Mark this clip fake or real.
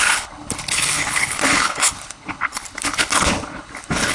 fake